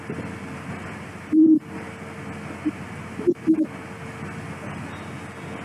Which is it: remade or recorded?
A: recorded